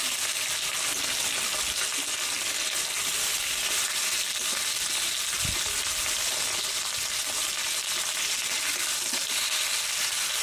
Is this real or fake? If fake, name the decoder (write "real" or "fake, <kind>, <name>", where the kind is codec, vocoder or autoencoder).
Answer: real